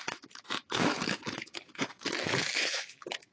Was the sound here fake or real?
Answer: fake